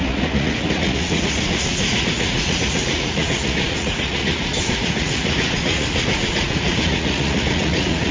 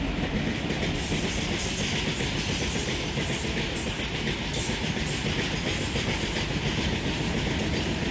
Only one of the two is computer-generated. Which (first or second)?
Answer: first